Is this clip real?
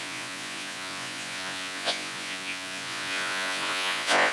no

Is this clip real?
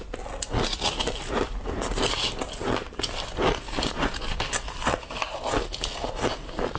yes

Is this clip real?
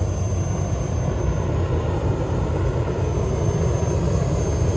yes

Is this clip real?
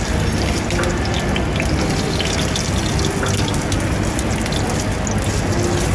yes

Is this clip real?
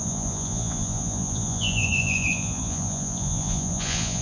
no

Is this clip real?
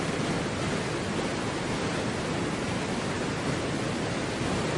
yes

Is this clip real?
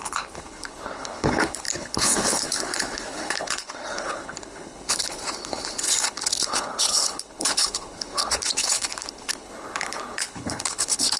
no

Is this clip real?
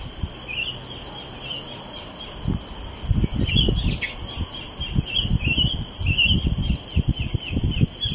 yes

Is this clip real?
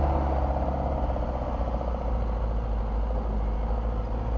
yes